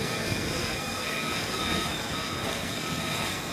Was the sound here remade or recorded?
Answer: remade